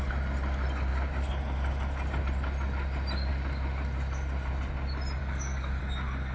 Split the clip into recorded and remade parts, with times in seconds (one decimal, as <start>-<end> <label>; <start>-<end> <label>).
0.0-5.2 recorded; 5.2-5.8 remade; 5.8-6.3 recorded